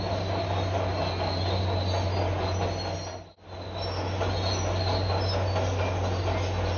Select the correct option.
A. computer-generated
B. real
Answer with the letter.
B